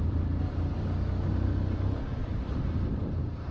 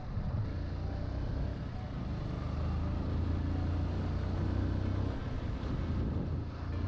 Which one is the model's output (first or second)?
first